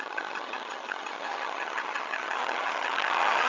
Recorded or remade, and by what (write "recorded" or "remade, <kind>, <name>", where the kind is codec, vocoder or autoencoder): remade, vocoder, HiFi-GAN